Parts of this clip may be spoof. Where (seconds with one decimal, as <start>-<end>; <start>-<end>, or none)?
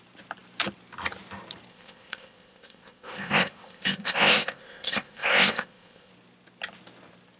1.7-6.1